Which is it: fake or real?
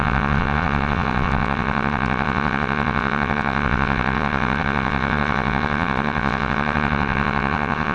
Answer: fake